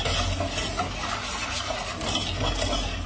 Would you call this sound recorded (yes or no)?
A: yes